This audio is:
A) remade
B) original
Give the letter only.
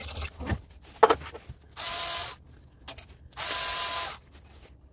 B